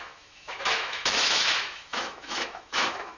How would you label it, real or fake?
fake